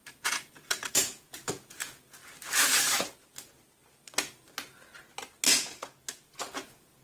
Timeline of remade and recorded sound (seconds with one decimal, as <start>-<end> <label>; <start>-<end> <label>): 0.0-2.2 remade; 2.2-5.5 recorded; 5.5-7.0 remade